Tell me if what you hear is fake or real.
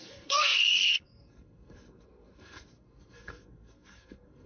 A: fake